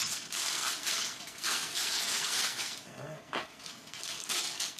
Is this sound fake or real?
fake